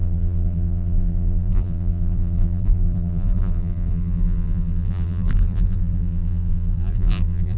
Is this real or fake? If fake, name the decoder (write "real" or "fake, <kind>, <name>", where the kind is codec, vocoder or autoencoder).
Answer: fake, vocoder, BigVGAN v2